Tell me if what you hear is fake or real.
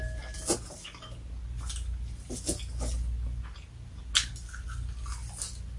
real